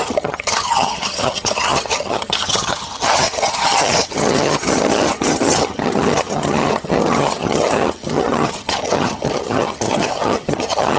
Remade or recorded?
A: remade